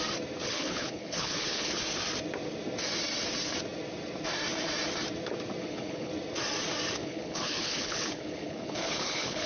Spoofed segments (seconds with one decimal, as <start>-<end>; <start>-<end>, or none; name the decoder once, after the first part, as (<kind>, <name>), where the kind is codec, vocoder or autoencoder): 0.4-1.8 (codec, HILCodec); 5.6-6.1; 7.0-9.5